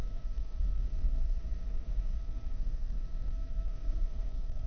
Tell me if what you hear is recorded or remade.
remade